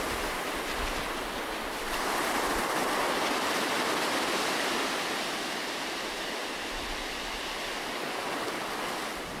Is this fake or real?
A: real